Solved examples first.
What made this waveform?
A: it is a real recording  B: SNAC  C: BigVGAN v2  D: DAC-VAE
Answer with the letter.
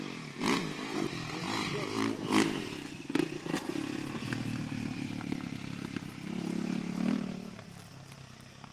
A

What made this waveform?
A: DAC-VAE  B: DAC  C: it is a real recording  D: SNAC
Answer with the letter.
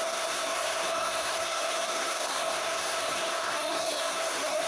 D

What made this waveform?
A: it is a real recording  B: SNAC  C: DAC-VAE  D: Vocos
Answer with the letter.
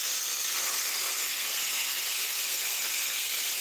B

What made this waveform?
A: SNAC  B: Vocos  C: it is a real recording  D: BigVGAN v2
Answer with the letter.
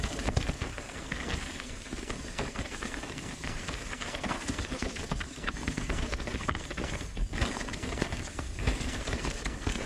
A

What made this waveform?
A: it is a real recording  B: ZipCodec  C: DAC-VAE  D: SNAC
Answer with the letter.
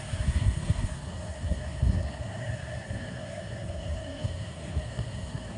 D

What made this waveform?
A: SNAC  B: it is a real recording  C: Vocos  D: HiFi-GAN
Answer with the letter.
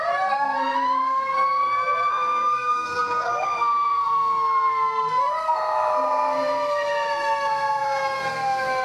A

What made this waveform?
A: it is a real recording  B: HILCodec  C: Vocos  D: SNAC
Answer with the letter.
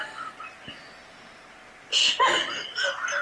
A